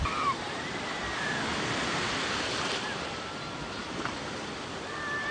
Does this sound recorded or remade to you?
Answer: remade